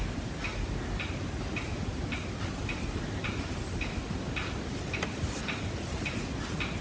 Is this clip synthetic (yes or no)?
no